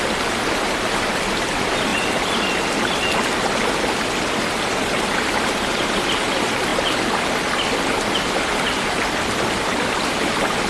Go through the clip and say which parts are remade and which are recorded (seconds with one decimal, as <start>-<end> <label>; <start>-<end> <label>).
0.0-10.7 recorded

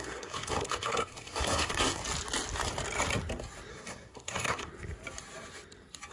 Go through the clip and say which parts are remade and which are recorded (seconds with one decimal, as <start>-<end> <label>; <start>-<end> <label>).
0.0-2.0 remade; 2.0-3.7 recorded; 3.7-4.7 remade; 4.7-6.1 recorded

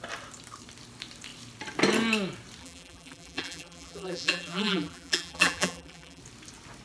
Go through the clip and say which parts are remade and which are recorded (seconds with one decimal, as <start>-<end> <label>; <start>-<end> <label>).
0.0-2.6 recorded; 2.6-6.2 remade; 6.2-6.8 recorded